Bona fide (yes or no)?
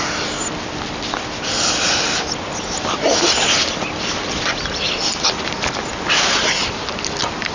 yes